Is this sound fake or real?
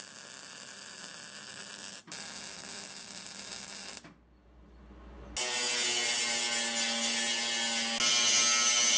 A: real